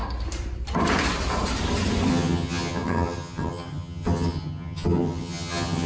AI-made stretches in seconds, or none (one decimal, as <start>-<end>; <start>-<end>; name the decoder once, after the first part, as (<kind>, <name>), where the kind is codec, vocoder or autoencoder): 2.1-5.9 (vocoder, HiFi-GAN)